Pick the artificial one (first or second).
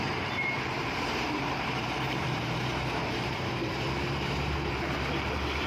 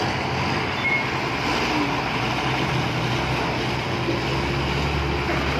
first